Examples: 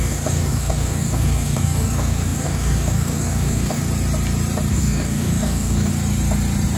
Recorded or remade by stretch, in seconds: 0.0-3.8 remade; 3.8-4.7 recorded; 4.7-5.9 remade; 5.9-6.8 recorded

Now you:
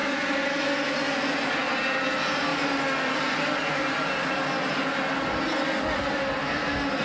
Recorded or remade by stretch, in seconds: 0.0-7.0 recorded

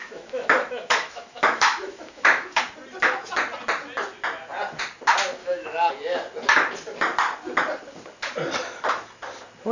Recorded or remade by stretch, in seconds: 0.0-2.6 remade; 2.6-5.4 recorded; 5.4-5.9 remade; 5.9-9.7 recorded

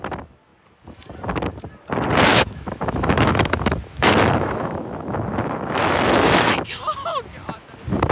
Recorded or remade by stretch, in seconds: 0.0-2.3 recorded; 2.3-6.8 remade; 6.8-8.1 recorded

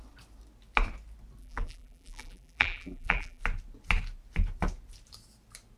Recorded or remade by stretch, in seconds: 0.0-1.4 recorded; 1.4-3.4 remade; 3.4-5.8 recorded